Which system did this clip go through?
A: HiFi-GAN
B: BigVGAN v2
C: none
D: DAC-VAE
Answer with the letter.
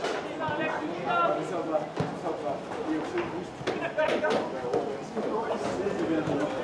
C